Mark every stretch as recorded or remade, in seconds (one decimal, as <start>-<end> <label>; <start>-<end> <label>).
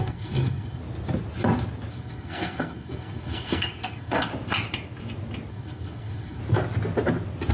0.0-0.8 remade; 0.8-1.9 recorded; 1.9-4.3 remade; 4.3-5.5 recorded; 5.5-6.4 remade; 6.4-7.5 recorded